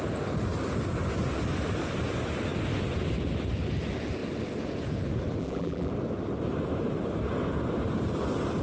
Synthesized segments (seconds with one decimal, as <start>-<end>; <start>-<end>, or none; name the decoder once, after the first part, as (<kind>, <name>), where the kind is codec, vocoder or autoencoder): 5.4-5.9 (vocoder, BigVGAN v2)